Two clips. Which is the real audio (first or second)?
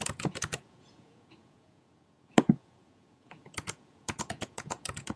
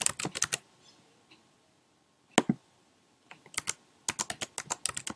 second